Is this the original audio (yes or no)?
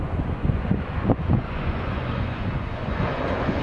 no